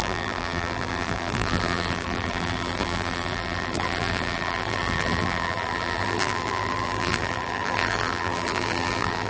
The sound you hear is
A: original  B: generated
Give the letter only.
B